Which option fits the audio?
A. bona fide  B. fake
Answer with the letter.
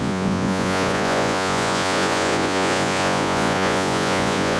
B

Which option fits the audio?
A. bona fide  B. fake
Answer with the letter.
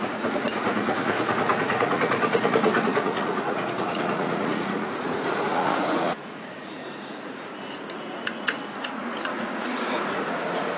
B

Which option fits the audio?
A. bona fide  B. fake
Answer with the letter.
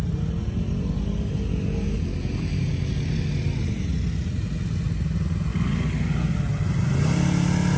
A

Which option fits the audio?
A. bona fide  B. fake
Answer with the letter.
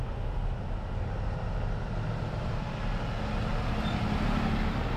A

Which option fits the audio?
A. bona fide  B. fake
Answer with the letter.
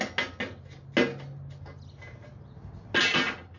A